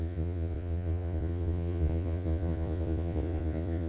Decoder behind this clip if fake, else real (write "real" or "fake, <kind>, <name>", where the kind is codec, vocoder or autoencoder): fake, vocoder, Vocos